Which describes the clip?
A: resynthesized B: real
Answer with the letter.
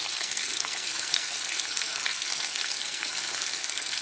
A